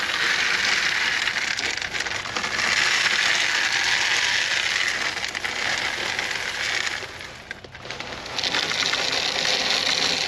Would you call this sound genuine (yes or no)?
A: yes